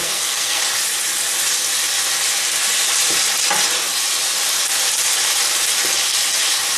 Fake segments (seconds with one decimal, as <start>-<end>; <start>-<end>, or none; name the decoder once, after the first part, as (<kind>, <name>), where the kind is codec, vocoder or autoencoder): 0.0-0.6 (codec, SNAC)